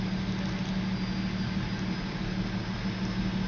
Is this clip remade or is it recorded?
recorded